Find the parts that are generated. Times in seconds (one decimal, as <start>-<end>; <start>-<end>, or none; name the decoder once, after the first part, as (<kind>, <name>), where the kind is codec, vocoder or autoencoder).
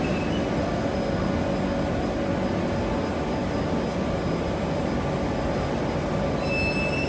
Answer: none